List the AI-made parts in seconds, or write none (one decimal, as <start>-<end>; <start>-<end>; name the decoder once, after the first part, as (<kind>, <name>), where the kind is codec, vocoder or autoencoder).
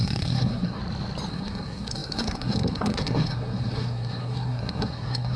0.0-0.8 (codec, SNAC); 1.3-5.4